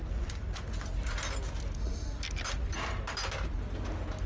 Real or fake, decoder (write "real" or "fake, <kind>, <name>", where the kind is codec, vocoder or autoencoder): real